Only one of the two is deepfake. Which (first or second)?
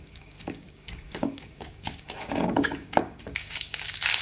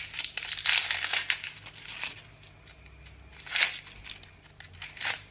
first